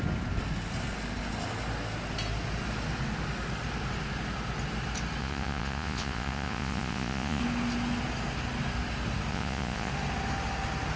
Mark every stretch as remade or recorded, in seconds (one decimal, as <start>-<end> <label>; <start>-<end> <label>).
0.0-5.2 recorded; 5.2-7.4 remade; 7.4-9.3 recorded; 9.3-9.9 remade; 9.9-11.0 recorded